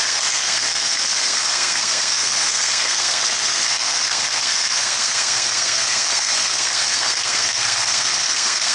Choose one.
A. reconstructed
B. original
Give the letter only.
A